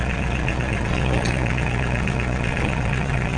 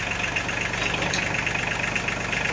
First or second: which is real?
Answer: second